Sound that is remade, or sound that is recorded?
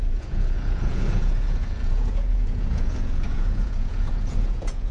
remade